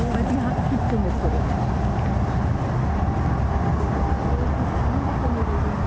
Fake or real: real